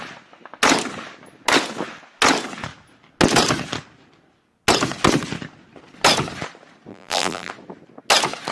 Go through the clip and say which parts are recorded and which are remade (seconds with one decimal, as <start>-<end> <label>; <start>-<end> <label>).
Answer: 0.0-6.9 recorded; 6.9-7.5 remade; 7.5-8.5 recorded